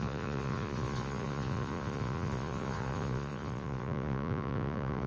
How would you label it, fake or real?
fake